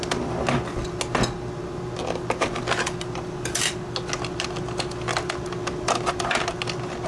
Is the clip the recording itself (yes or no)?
yes